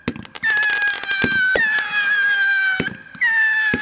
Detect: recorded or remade recorded